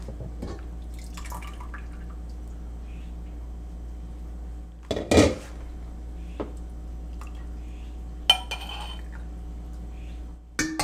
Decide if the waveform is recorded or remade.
recorded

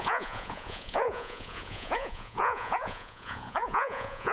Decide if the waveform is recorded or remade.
remade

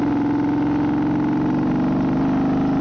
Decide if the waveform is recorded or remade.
recorded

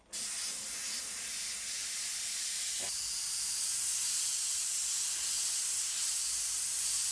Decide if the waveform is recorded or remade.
recorded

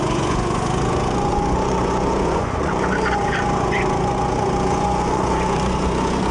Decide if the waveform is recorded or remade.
remade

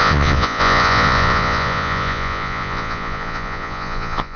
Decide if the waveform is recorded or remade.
remade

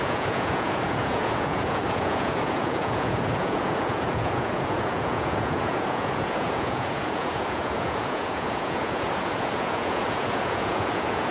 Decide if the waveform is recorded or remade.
remade